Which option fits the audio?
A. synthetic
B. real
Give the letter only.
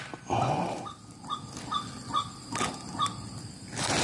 B